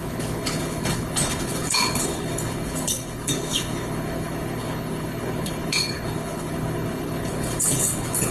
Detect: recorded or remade remade